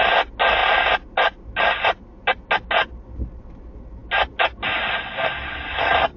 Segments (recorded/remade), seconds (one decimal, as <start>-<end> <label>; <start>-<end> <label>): 0.0-6.2 recorded